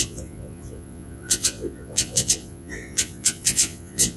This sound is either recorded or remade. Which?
remade